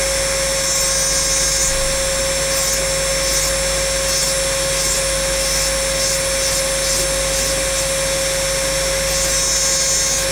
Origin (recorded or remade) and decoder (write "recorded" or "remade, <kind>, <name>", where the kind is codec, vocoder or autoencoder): recorded